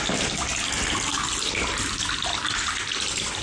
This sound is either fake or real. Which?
real